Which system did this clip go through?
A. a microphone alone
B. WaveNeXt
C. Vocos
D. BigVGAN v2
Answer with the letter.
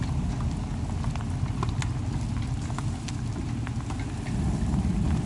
A